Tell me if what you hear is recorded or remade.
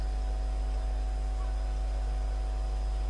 recorded